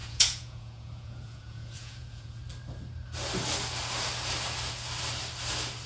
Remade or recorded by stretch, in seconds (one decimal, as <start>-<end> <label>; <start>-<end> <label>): 0.0-2.4 remade; 2.4-5.9 recorded